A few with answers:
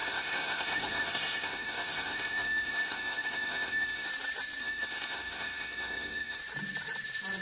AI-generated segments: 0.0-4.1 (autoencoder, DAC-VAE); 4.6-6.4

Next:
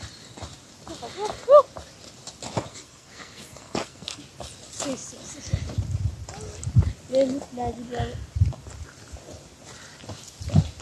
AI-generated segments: 2.7-4.2 (codec, SNAC)

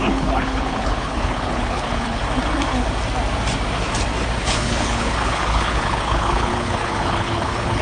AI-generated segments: 0.0-2.2 (codec, HILCodec); 4.4-7.8